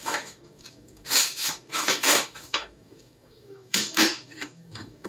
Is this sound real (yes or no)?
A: no